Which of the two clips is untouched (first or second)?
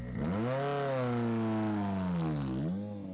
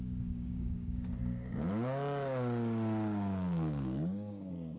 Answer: first